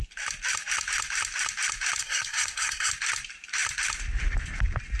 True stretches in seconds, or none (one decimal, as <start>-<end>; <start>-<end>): 0.0-2.0; 2.9-5.0